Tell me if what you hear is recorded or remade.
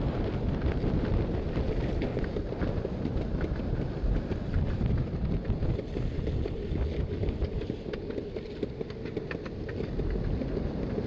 recorded